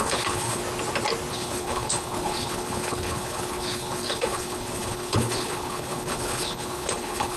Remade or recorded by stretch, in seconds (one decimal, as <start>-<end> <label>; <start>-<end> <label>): 0.0-0.6 remade; 0.6-1.3 recorded; 1.3-7.4 remade